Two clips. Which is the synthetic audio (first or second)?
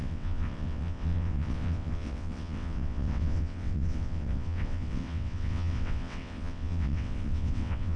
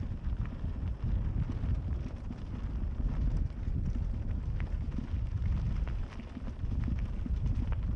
first